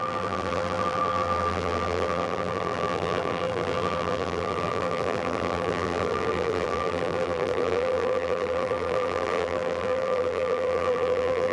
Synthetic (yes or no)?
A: yes